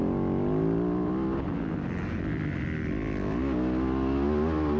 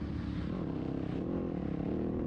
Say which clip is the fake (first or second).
second